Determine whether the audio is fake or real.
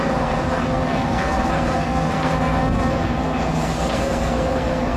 fake